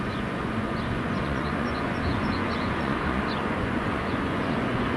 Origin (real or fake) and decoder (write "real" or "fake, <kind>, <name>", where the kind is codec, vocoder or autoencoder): fake, vocoder, Vocos